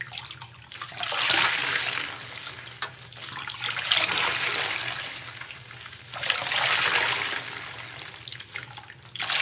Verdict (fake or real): real